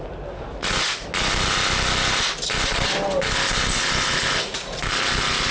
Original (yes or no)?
yes